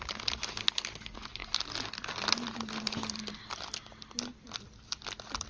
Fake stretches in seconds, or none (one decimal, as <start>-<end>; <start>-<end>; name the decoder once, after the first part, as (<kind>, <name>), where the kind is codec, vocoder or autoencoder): none

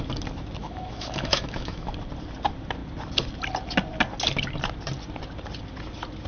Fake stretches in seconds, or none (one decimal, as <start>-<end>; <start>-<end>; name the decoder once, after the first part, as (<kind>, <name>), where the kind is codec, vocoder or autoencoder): 0.6-1.9 (autoencoder, DAC-VAE)

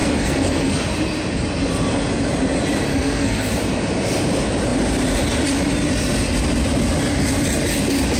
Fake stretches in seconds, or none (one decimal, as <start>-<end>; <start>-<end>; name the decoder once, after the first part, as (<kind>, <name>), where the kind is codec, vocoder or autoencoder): 0.0-0.8 (codec, SNAC); 2.9-3.5

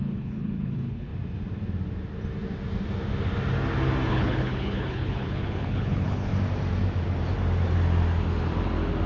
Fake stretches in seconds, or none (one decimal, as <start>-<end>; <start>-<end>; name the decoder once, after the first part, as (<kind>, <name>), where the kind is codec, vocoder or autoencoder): 0.0-1.1 (codec, HILCodec); 4.1-6.3

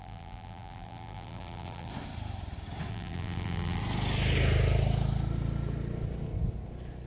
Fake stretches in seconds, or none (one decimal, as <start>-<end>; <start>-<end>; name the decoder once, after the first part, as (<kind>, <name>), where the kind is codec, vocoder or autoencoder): 0.0-1.9 (vocoder, BigVGAN v2); 2.9-3.8

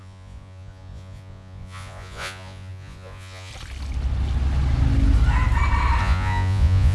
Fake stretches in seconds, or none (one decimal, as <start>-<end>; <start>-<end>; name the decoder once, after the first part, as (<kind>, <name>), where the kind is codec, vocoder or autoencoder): 0.0-3.5 (vocoder, Vocos); 6.0-6.9

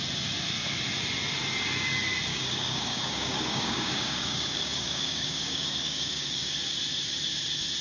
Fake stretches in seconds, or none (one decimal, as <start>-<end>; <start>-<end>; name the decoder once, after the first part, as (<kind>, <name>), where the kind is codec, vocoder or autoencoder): 2.3-6.5 (codec, DAC)